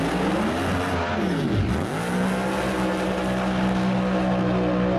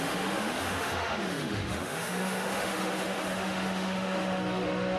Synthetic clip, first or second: second